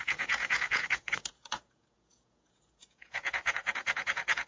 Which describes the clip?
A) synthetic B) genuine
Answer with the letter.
A